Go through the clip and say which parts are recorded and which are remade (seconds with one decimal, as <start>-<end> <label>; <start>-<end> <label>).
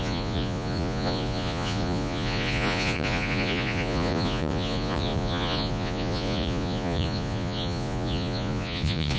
0.0-9.2 remade